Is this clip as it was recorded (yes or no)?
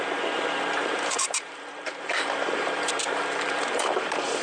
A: no